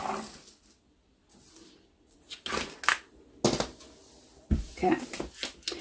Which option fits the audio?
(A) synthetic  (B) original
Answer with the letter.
B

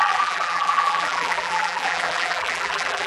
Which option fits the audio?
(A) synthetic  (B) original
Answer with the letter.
A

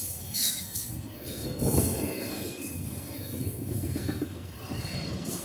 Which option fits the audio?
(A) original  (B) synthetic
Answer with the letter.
B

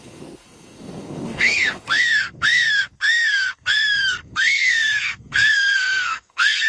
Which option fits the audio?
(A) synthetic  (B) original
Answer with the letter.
A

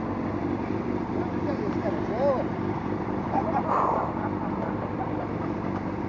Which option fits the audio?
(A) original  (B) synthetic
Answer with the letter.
A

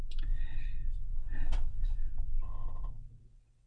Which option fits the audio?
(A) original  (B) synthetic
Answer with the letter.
B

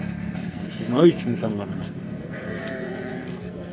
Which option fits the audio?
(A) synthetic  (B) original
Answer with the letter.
A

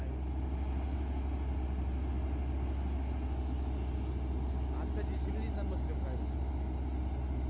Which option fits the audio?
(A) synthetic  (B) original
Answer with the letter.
B